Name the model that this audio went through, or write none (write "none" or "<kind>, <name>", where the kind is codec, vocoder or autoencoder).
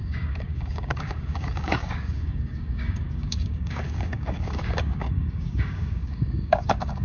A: codec, DAC